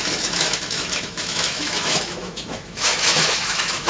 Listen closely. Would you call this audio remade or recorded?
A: remade